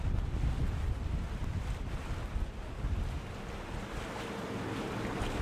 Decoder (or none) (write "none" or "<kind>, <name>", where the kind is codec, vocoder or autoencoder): none